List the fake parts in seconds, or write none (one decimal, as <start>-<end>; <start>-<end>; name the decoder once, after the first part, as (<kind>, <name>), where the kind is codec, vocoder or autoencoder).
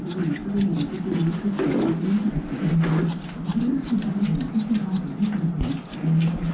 3.5-4.2 (vocoder, BigVGAN v2)